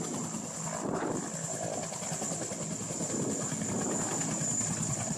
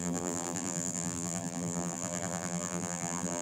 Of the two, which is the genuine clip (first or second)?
first